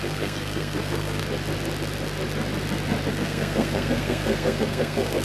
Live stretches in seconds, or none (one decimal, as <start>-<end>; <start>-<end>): 1.2-3.1